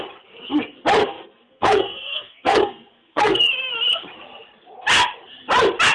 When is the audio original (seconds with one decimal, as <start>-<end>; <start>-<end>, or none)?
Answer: 0.0-1.0; 3.5-5.9

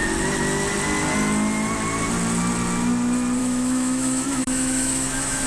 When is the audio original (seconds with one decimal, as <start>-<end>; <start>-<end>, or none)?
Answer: 0.0-3.4